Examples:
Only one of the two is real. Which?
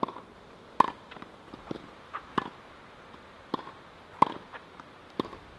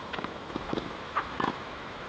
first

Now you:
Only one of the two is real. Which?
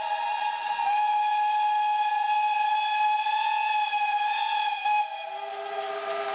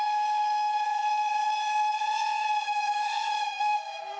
first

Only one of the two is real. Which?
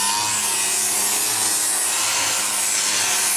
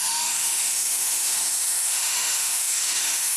first